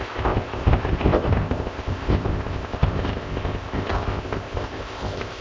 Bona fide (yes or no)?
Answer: no